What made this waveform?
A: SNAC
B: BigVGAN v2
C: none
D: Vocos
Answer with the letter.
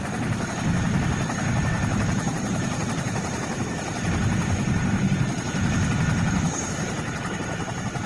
B